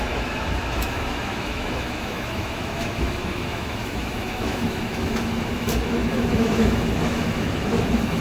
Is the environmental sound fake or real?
fake